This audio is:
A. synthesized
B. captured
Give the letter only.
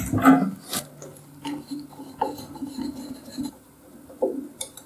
B